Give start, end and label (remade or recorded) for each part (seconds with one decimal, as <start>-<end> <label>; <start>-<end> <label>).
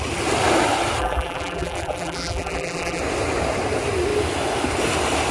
0.0-1.0 recorded; 1.0-3.0 remade; 3.0-5.3 recorded